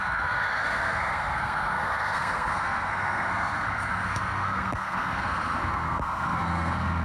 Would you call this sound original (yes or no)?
no